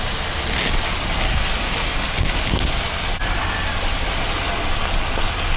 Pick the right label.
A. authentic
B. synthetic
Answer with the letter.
A